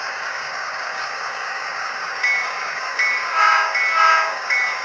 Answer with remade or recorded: remade